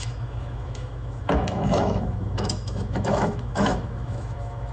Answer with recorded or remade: remade